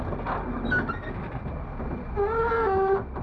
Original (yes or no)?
yes